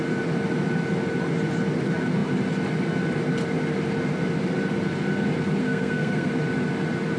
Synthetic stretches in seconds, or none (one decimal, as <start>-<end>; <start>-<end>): 5.6-6.3